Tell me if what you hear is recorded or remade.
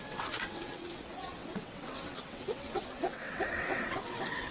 remade